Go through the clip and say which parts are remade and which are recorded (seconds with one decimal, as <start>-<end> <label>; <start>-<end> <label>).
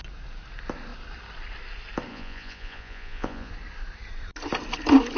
0.0-2.1 recorded; 2.1-3.5 remade; 3.5-5.2 recorded